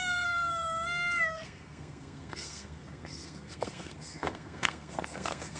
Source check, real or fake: fake